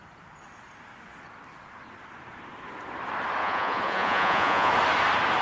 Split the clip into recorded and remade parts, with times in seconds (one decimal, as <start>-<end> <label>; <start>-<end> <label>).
0.0-3.4 recorded; 3.4-4.7 remade; 4.7-5.4 recorded